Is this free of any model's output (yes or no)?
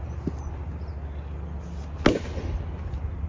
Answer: yes